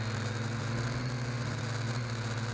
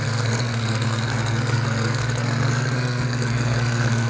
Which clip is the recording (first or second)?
first